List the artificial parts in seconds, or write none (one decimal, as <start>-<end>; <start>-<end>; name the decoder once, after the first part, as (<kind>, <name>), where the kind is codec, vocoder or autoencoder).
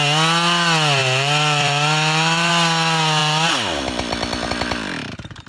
1.0-2.5 (vocoder, BigVGAN v2); 3.2-4.1